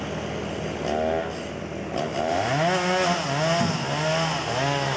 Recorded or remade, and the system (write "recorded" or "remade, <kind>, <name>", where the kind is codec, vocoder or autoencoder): recorded